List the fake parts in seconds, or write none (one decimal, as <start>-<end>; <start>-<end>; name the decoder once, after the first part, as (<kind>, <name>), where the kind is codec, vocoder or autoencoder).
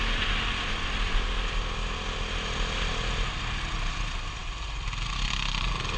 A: none